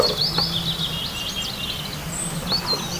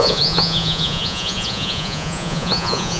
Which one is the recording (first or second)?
first